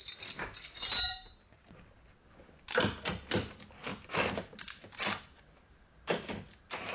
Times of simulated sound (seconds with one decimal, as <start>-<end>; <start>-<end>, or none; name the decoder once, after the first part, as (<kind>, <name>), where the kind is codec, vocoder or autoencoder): none